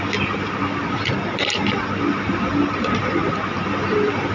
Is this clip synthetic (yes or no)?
no